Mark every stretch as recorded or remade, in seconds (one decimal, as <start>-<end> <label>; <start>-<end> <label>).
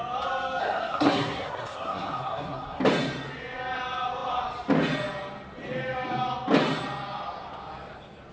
0.0-0.6 recorded; 0.6-2.8 remade; 2.8-8.3 recorded